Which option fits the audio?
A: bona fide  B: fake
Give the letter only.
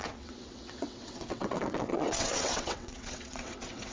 B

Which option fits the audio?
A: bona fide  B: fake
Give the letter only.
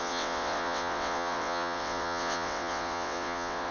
B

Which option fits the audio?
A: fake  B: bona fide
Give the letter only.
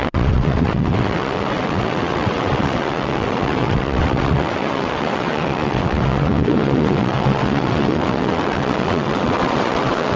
A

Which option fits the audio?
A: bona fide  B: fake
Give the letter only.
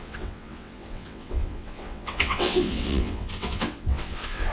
B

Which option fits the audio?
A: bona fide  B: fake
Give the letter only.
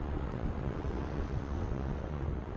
B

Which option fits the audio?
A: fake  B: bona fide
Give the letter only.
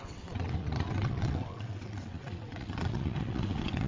A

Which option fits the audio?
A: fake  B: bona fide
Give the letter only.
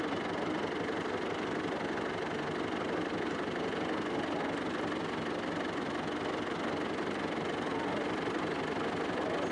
B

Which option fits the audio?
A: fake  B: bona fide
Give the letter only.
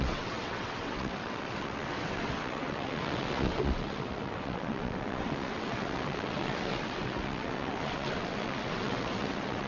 A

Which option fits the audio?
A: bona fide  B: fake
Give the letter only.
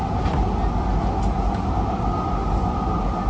A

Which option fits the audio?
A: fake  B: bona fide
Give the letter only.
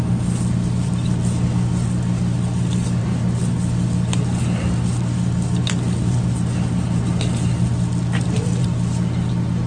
B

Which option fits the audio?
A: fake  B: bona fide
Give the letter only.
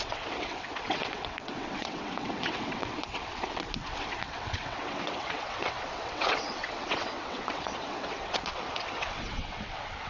A